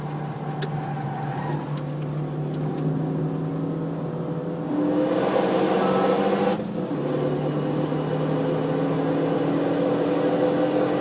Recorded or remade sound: recorded